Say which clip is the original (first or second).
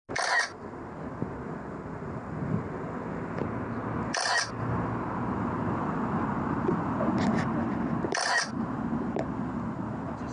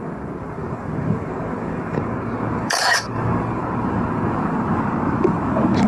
first